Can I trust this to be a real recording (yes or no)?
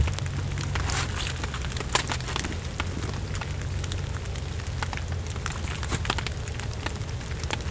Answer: yes